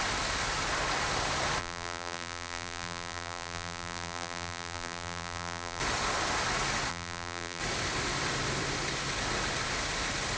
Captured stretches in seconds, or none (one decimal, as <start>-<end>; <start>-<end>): 0.0-1.6; 5.8-6.9; 7.6-10.4

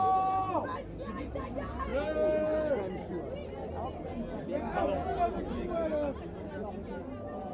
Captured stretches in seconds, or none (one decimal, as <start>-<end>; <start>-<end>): 0.0-7.5

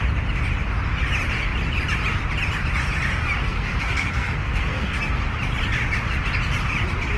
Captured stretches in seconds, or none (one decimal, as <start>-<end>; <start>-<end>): 0.0-3.4; 5.2-7.2

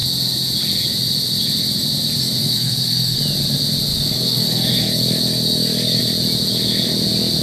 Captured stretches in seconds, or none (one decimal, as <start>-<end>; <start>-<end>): 0.0-2.4; 3.2-3.9; 6.0-7.4

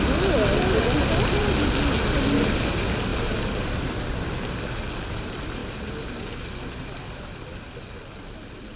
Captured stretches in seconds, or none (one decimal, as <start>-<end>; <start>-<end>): 0.0-8.8

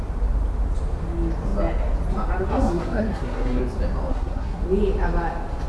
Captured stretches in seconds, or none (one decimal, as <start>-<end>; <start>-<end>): 0.0-2.5; 3.6-4.1; 4.6-5.7